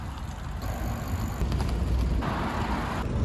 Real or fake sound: real